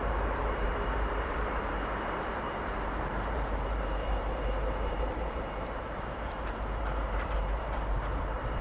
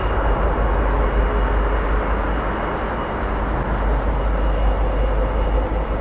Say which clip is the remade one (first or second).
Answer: first